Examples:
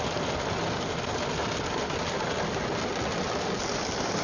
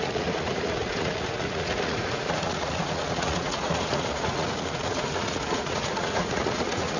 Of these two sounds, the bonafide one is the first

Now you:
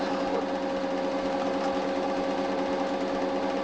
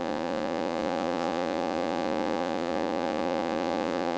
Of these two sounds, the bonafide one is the first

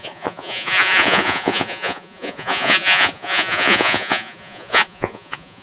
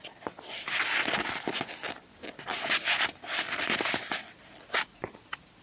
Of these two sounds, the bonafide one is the second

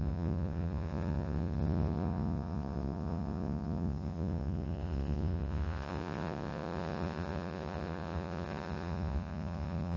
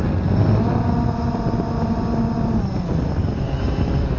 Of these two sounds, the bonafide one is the second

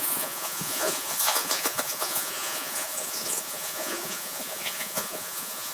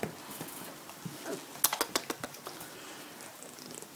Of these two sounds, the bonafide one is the second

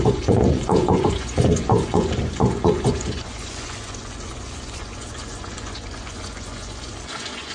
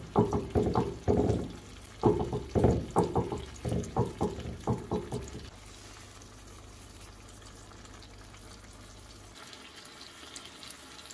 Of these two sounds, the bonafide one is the second